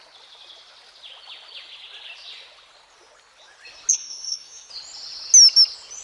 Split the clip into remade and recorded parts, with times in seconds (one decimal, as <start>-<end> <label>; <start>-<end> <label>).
0.0-3.9 recorded; 3.9-4.7 remade; 4.7-6.0 recorded